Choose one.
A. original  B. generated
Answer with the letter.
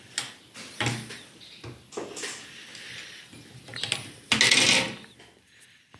A